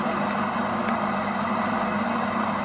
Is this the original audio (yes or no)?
yes